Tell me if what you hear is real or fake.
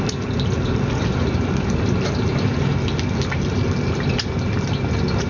real